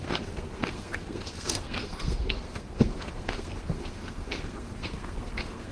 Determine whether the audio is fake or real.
fake